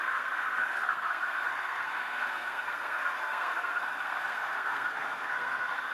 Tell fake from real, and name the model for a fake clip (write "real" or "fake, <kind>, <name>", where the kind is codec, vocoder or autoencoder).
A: fake, codec, SNAC